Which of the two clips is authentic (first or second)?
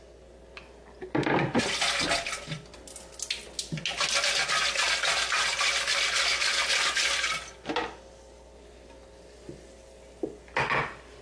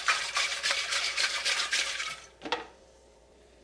first